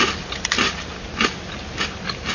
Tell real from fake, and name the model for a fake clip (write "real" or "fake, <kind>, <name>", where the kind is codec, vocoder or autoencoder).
real